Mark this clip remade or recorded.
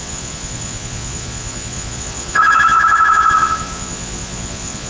remade